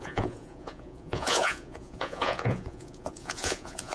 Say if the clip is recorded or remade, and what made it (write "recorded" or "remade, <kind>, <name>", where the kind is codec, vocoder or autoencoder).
remade, vocoder, Vocos